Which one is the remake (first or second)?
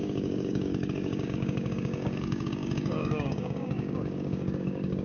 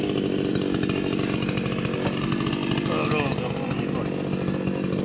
first